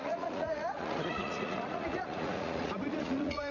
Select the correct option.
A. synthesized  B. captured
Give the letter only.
A